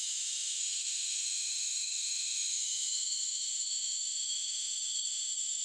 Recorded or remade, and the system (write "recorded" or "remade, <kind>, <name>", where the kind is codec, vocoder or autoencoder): remade, autoencoder, DAC-VAE